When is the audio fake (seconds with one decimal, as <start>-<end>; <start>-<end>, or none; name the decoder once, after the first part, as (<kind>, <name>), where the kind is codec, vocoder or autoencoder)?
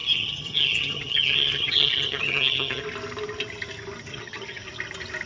0.0-2.8 (vocoder, HiFi-GAN); 4.1-4.6